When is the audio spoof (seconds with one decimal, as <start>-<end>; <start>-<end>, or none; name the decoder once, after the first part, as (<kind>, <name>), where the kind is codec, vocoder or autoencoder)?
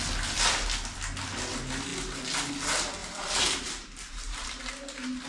3.0-4.7 (vocoder, BigVGAN v2)